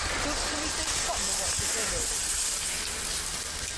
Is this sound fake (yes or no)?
no